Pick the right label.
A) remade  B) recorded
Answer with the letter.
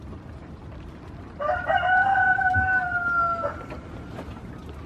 B